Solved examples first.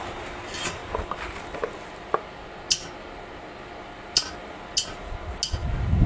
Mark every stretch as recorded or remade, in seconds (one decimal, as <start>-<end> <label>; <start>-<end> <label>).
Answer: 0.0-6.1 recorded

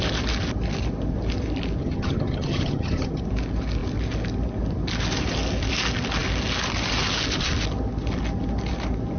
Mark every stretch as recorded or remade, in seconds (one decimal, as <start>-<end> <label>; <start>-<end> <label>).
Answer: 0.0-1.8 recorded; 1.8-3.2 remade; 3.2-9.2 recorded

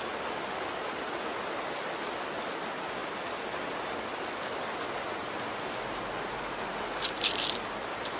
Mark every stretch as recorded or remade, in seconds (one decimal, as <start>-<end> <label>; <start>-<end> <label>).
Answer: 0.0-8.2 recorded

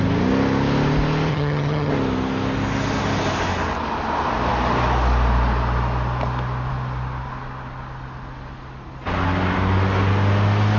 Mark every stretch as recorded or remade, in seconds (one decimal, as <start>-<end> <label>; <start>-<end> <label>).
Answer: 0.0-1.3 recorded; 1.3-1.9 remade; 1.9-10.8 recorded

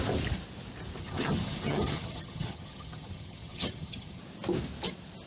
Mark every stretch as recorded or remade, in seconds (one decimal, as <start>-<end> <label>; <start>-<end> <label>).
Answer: 0.0-1.0 recorded; 1.0-4.2 remade; 4.2-5.3 recorded

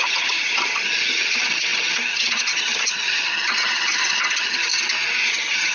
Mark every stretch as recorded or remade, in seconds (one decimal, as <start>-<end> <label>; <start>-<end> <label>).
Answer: 0.0-4.7 remade; 4.7-5.3 recorded; 5.3-5.7 remade

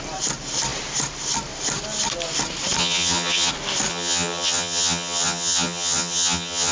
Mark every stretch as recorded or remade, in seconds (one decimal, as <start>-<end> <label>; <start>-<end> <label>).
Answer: 0.0-2.8 recorded; 2.8-3.5 remade; 3.5-3.9 recorded; 3.9-6.7 remade

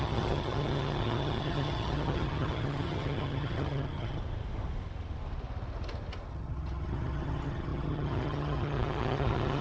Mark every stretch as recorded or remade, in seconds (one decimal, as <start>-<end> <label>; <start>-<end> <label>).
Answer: 0.0-4.2 remade; 4.2-6.3 recorded; 6.3-9.6 remade